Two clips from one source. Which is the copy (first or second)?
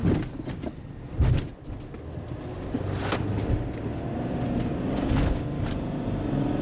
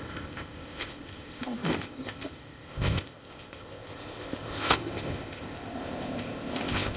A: second